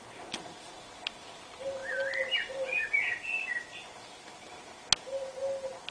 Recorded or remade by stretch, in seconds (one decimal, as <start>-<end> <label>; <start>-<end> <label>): 0.0-5.9 recorded